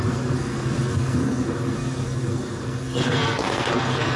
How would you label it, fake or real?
fake